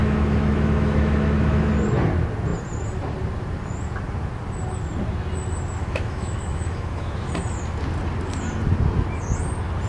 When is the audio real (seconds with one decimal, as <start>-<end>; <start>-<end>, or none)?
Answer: 1.7-5.8; 7.3-9.9